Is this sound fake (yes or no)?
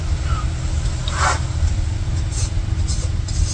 no